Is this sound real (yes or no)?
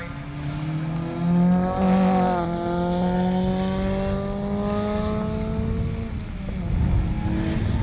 yes